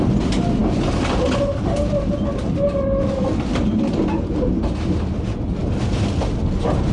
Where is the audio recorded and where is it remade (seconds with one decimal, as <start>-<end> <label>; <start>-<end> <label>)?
0.0-6.9 recorded